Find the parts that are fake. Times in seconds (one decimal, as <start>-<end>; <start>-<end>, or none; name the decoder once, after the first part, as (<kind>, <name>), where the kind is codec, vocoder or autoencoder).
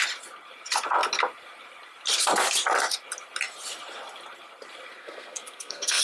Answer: 5.0-6.0 (codec, SNAC)